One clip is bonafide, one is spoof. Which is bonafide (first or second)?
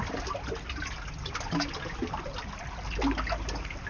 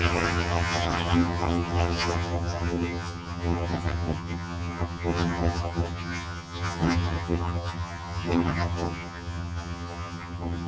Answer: first